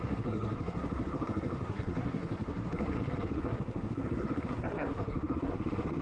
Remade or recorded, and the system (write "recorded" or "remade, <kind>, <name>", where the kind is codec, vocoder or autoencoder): remade, codec, SNAC